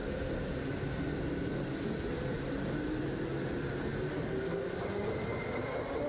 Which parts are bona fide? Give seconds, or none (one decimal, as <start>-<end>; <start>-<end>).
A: 0.0-6.1

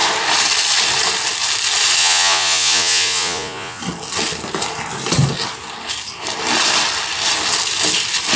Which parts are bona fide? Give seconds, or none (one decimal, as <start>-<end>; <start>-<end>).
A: 0.0-2.0; 3.8-8.4

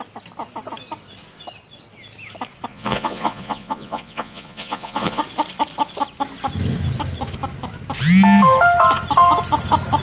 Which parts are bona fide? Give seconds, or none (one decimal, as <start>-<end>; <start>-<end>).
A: 0.0-2.7; 5.2-10.0

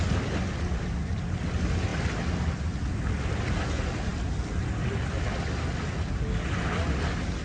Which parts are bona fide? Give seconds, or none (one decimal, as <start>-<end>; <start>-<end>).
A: 0.0-7.4

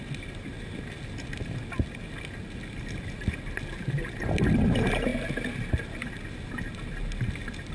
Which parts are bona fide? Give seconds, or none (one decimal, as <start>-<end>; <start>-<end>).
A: 0.0-7.7

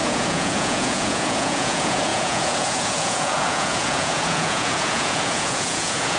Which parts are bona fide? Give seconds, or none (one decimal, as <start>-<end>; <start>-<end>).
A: none

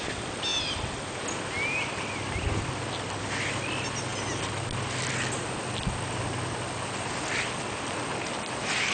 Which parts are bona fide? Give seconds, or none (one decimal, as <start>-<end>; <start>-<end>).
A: 0.0-8.9

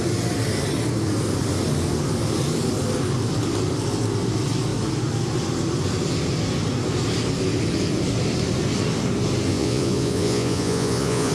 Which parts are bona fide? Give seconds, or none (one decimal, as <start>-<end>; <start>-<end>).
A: 0.0-9.5